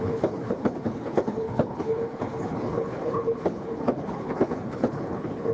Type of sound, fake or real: fake